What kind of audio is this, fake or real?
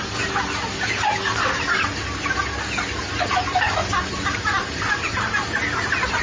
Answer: real